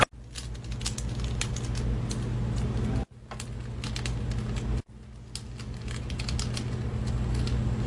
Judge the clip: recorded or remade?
recorded